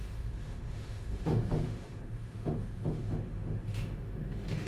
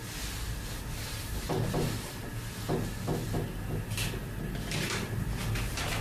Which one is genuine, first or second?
second